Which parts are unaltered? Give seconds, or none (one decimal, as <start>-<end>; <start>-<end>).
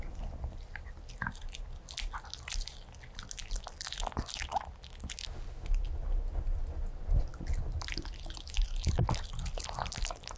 0.0-10.4